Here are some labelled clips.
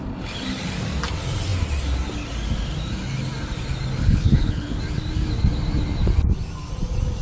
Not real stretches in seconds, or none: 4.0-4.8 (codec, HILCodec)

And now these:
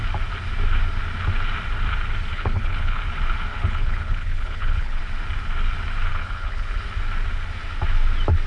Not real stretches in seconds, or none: 2.3-3.0 (codec, HILCodec); 3.5-5.0; 6.1-6.8

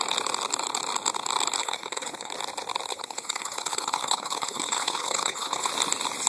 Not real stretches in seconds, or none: 1.6-2.3 (codec, HILCodec); 2.9-5.7